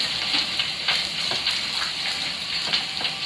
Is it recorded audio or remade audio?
recorded